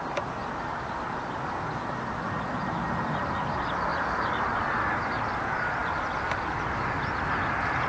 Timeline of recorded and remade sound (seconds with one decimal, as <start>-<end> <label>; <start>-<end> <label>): 0.0-7.9 recorded